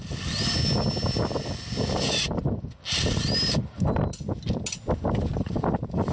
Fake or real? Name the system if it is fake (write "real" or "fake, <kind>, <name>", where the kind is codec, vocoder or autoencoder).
real